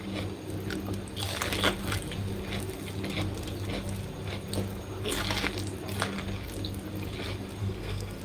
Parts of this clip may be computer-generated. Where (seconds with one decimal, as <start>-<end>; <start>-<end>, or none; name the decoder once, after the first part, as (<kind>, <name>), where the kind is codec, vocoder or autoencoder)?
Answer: 7.6-8.2 (codec, SNAC)